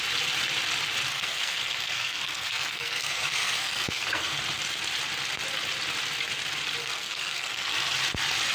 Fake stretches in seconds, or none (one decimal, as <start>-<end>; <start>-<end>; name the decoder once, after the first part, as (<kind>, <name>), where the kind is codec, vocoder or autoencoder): 1.1-4.4 (codec, SNAC); 6.8-7.7